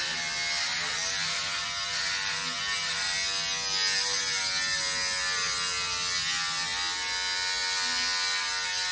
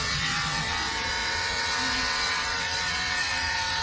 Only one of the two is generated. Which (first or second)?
second